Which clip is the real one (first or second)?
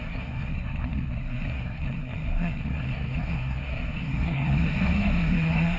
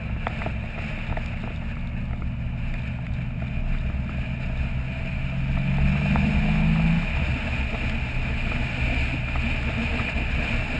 second